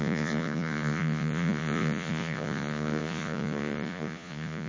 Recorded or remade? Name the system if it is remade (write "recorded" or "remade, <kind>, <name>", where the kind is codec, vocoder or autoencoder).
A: remade, vocoder, Vocos